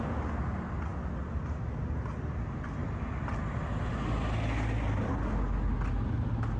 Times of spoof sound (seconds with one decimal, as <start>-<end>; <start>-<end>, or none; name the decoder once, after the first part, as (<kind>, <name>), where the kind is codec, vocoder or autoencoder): none